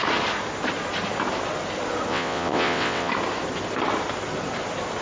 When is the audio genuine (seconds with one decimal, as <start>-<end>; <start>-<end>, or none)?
0.0-2.1; 3.1-5.0